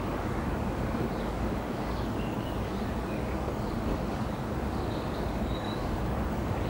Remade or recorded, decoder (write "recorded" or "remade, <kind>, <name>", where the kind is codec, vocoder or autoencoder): remade, codec, DAC